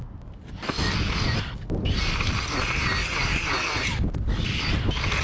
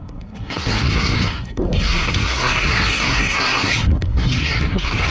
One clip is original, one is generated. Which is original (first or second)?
first